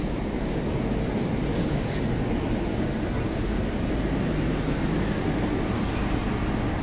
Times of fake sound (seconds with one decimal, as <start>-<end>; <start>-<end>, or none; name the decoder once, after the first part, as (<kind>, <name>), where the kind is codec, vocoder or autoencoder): 1.5-2.0 (codec, DAC)